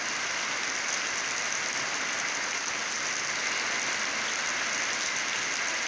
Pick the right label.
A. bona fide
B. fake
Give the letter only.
A